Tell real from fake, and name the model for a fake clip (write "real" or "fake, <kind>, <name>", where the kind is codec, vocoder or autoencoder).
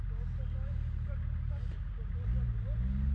real